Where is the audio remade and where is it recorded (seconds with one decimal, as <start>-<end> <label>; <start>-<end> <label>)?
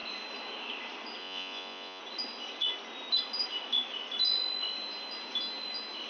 0.0-1.2 recorded; 1.2-2.0 remade; 2.0-6.1 recorded